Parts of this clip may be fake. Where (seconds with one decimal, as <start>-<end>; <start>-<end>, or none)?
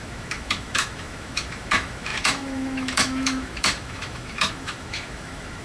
0.0-5.6